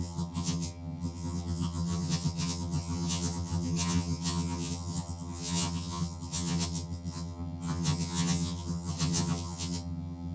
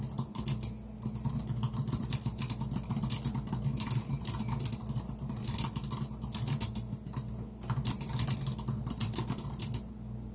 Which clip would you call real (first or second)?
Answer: second